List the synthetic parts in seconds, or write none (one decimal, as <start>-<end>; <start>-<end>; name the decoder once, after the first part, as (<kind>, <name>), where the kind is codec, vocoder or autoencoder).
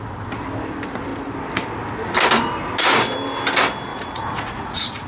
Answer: 3.9-5.1 (vocoder, Vocos)